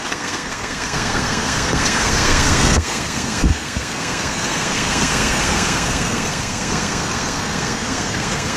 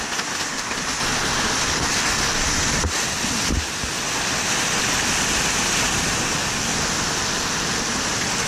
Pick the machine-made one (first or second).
first